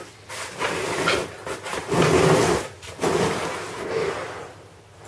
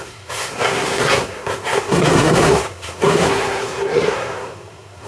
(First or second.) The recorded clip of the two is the first